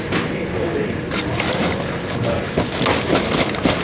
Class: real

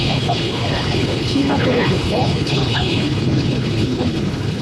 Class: fake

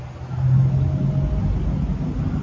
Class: real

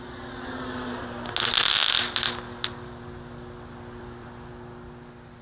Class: real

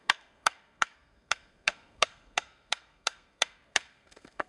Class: fake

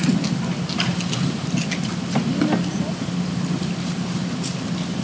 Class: real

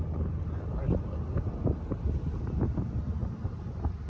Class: real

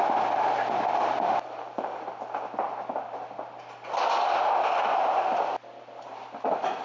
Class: real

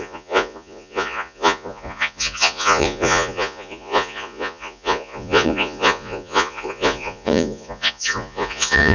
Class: fake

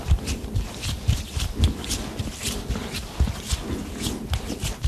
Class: real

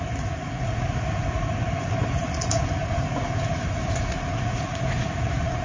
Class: fake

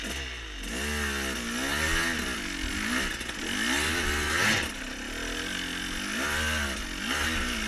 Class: real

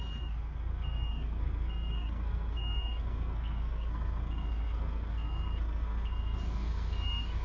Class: fake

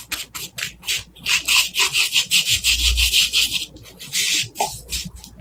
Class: real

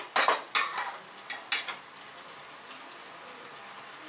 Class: real